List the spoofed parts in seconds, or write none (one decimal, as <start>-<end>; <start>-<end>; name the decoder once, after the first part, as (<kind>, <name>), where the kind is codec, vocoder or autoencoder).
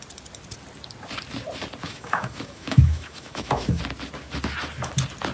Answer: 1.8-3.8 (autoencoder, DAC-VAE)